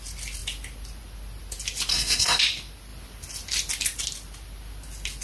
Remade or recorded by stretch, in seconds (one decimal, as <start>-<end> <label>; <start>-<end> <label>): 0.0-1.9 recorded; 1.9-2.4 remade; 2.4-5.2 recorded